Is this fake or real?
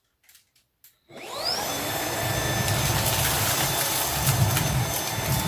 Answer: real